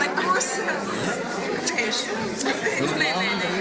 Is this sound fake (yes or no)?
no